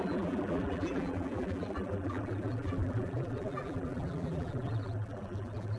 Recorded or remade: remade